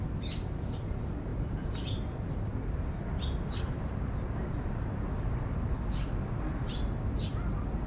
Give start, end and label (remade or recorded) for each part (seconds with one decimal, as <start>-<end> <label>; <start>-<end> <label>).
0.0-7.9 recorded